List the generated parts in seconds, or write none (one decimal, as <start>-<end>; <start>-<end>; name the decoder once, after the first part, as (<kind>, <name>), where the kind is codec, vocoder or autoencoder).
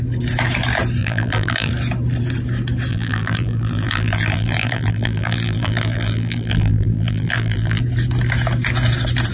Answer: 1.0-1.7 (vocoder, BigVGAN v2); 2.9-7.8